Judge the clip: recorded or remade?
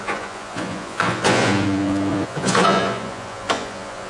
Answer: remade